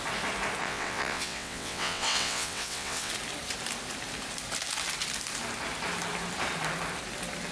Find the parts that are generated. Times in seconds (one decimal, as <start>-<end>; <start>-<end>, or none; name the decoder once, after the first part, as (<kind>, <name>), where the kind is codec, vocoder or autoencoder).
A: 0.6-3.1 (vocoder, WaveNeXt)